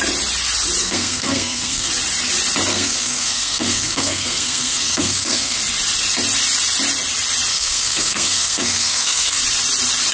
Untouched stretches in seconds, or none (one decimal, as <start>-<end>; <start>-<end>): 0.0-0.8; 1.9-2.7; 5.6-7.5; 9.4-10.1